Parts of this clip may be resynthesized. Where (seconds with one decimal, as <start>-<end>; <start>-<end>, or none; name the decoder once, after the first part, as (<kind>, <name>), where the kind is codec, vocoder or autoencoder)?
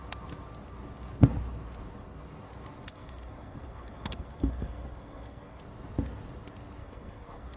2.9-5.6 (codec, SNAC); 6.8-7.6